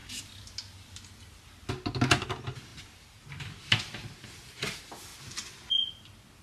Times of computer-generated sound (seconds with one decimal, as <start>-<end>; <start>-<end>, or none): none